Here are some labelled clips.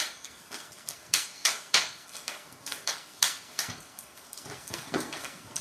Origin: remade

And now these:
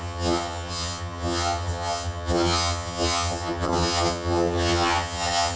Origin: remade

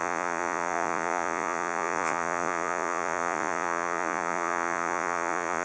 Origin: remade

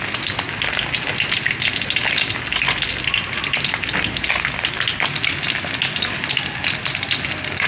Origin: recorded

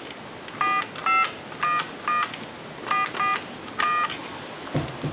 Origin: recorded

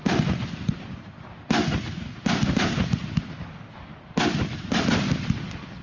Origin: recorded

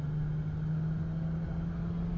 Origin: recorded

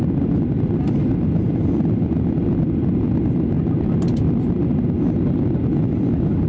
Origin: recorded